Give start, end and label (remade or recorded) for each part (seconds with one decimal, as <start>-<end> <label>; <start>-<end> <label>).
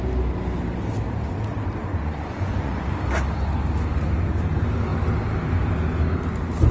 0.0-1.9 recorded; 1.9-2.7 remade; 2.7-6.7 recorded